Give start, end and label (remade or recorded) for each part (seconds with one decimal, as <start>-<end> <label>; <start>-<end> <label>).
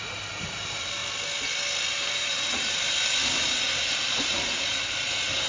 0.0-1.0 remade; 1.0-1.9 recorded; 1.9-5.5 remade